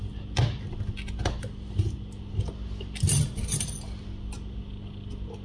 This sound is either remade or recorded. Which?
recorded